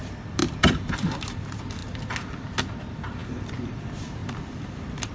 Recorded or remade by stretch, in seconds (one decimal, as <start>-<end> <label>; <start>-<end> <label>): 0.0-1.8 remade; 1.8-2.8 recorded; 2.8-3.2 remade; 3.2-3.8 recorded; 3.8-5.1 remade